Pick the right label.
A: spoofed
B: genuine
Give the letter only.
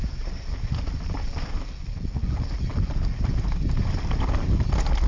B